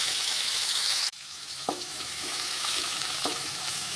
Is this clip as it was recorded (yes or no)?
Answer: no